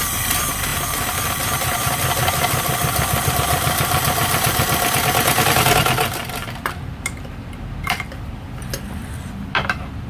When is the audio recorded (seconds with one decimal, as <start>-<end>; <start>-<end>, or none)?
0.0-10.1